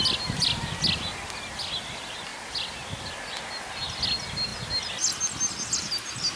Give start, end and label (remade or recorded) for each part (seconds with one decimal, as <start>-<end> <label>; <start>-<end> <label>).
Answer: 0.0-6.4 recorded